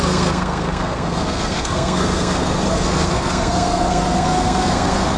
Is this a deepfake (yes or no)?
yes